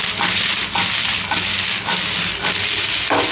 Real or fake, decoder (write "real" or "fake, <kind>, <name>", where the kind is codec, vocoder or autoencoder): real